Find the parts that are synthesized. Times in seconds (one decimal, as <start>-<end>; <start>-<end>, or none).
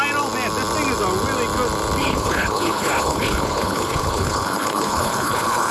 2.0-5.7